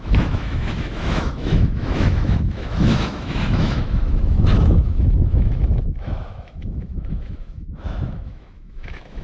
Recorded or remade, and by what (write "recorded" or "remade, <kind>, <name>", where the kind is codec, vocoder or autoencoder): remade, autoencoder, DAC-VAE